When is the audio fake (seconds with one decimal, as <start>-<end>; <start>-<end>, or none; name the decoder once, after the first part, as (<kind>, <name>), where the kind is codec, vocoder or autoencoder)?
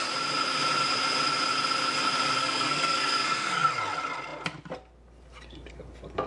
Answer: 2.4-3.7 (codec, SNAC)